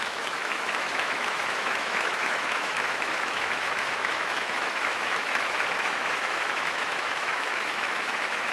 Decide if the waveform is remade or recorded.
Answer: remade